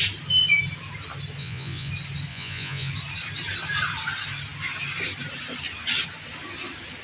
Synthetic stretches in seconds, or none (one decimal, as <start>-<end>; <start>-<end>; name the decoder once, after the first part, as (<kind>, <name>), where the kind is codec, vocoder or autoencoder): 1.4-1.9 (vocoder, Vocos); 2.3-2.9

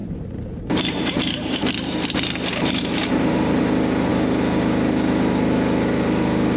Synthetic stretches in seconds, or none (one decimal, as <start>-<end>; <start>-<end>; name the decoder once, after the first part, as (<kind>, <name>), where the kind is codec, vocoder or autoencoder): 0.0-1.6 (vocoder, BigVGAN v2); 2.5-3.6

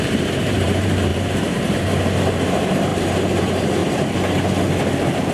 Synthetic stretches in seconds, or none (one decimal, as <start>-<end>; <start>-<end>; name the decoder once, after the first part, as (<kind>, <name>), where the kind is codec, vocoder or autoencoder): 0.0-3.8 (vocoder, BigVGAN v2)

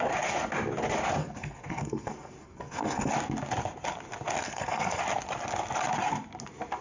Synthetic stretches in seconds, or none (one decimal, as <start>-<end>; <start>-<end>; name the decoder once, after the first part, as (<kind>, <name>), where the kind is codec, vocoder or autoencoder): 1.2-3.1 (codec, SNAC); 4.4-5.0

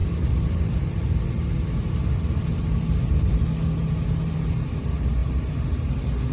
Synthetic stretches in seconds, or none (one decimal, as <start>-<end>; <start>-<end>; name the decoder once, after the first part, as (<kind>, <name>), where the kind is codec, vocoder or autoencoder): 5.2-5.8 (vocoder, BigVGAN v2)

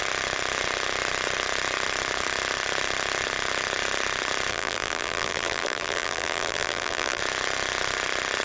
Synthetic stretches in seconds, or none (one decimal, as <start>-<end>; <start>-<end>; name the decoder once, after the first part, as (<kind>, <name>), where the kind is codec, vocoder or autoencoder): 4.5-7.2 (vocoder, BigVGAN v2)

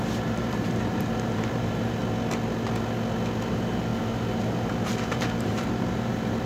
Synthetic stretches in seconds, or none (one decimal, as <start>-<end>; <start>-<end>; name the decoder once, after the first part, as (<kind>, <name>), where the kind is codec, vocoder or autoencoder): 0.0-2.0 (vocoder, BigVGAN v2); 3.5-6.5